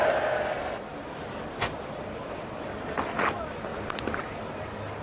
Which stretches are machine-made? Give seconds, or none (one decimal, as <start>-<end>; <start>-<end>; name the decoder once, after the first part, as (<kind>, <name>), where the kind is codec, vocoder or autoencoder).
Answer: none